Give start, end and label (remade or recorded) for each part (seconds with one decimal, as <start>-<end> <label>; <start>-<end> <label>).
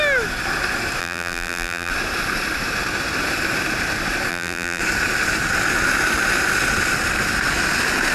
0.0-1.0 recorded; 1.0-1.9 remade; 1.9-4.3 recorded; 4.3-4.8 remade; 4.8-8.1 recorded